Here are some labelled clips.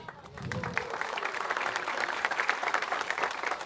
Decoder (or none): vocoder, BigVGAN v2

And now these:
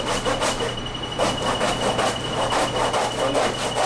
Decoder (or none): none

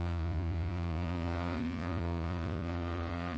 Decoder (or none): vocoder, Vocos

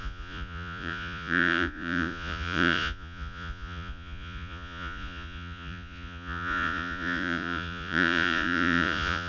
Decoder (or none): vocoder, Vocos